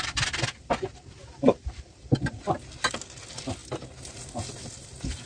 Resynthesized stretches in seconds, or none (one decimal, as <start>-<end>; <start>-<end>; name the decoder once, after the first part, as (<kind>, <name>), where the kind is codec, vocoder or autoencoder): 1.2-2.1 (vocoder, BigVGAN v2)